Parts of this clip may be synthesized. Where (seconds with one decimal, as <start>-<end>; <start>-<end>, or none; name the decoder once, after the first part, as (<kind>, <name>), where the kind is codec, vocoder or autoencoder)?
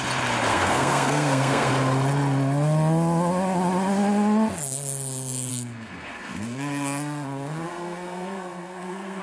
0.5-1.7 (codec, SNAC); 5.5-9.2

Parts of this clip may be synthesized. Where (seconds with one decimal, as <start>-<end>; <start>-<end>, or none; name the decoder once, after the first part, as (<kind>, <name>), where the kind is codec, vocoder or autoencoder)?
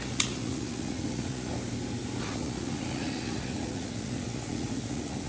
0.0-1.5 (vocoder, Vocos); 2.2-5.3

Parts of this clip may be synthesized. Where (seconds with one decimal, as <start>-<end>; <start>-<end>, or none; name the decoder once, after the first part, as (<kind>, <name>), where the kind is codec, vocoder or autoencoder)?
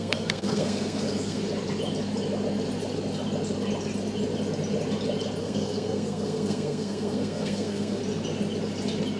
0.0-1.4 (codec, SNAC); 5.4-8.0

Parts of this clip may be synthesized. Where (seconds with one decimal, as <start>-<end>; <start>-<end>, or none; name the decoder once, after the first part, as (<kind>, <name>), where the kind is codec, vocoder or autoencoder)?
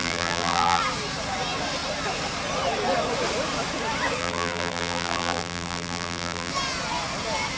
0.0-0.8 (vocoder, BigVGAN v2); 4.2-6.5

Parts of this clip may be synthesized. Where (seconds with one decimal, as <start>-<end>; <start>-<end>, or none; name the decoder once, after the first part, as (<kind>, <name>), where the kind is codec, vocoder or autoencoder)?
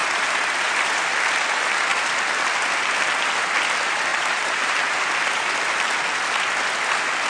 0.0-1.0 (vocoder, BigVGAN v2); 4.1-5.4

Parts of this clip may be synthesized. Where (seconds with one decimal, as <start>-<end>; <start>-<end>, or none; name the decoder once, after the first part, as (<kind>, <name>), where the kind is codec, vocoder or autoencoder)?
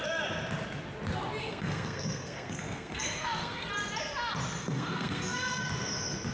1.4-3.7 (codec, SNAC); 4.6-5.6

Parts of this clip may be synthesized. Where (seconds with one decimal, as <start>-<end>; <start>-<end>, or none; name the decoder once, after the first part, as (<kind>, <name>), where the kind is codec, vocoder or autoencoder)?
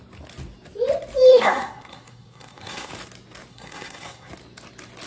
1.3-2.9 (codec, SNAC); 3.5-4.3